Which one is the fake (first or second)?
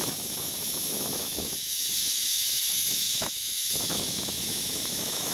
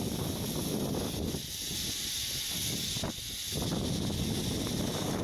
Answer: first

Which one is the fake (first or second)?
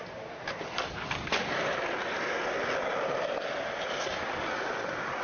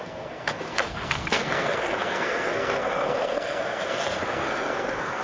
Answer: second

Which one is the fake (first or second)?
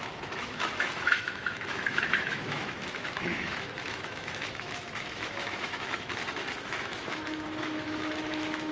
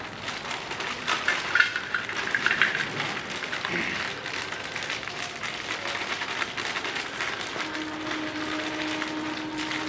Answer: first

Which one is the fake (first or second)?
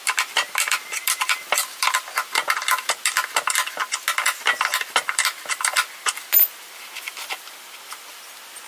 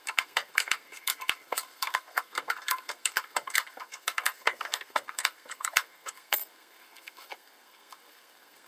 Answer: second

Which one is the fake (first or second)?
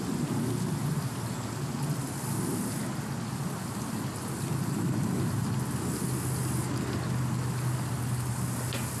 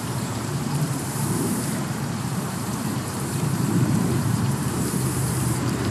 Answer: second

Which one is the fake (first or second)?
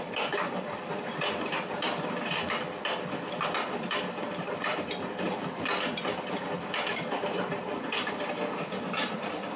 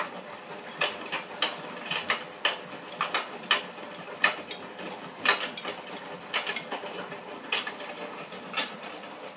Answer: first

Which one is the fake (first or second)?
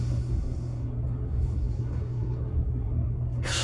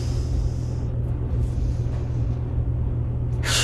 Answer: first